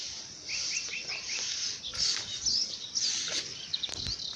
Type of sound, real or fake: real